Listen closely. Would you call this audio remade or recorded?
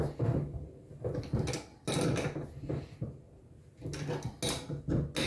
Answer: recorded